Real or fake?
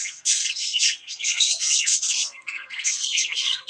fake